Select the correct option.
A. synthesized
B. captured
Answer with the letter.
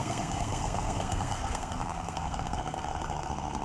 A